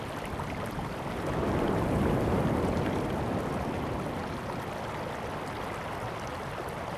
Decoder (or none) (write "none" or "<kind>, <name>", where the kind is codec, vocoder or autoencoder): none